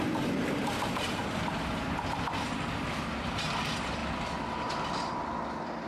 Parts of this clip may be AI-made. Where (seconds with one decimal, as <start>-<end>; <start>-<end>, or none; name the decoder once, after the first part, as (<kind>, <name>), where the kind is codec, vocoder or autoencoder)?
none